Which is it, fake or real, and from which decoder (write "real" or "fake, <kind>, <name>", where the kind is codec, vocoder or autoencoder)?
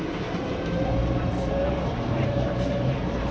fake, vocoder, BigVGAN v2